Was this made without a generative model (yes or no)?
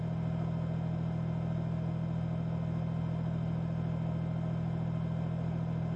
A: yes